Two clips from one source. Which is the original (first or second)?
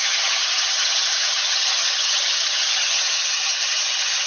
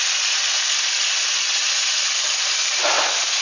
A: second